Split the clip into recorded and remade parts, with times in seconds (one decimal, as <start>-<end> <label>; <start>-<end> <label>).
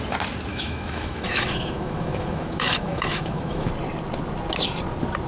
0.0-0.5 recorded; 0.5-3.7 remade; 3.7-5.3 recorded